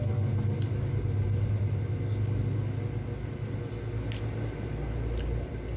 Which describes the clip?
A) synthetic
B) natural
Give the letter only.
B